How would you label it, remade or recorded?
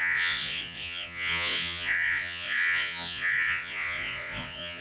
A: remade